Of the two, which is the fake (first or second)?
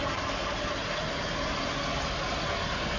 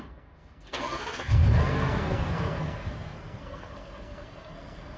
second